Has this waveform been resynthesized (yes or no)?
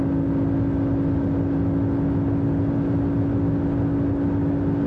no